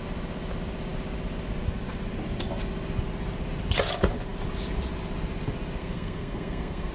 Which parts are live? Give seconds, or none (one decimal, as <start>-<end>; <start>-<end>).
0.0-5.8